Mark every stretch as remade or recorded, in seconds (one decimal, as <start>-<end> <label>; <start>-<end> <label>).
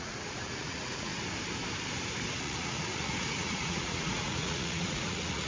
0.0-1.1 remade; 1.1-2.4 recorded; 2.4-5.5 remade